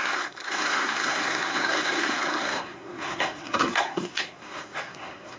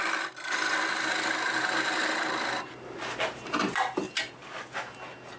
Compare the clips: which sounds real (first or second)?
second